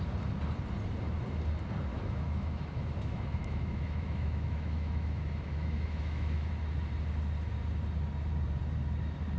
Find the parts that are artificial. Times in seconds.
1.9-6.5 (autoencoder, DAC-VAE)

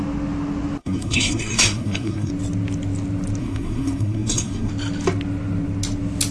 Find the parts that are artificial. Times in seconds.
0.8-2.3 (codec, SNAC); 3.4-4.7

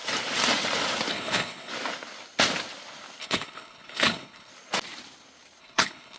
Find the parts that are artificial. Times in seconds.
1.1-1.7 (codec, HILCodec); 3.2-4.5; 5.6-6.2

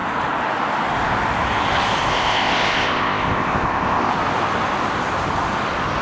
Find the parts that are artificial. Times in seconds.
2.1-4.1 (codec, ZipCodec)

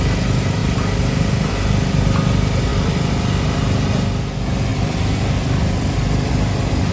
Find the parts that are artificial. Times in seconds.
2.7-3.4 (vocoder, BigVGAN v2); 4.7-6.9

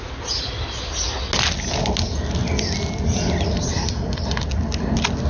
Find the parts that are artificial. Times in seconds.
none

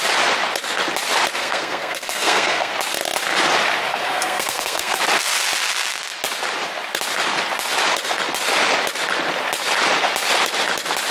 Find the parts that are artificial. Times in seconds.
1.4-2.7 (codec, SNAC); 3.9-5.0

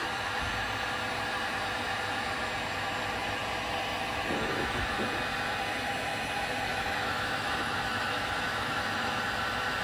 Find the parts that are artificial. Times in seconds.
6.7-9.2 (autoencoder, DAC-VAE)